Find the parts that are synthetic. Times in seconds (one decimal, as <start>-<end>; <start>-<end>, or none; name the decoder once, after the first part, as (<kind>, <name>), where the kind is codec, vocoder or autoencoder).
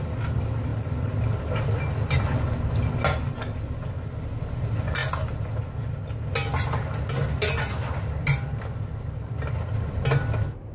none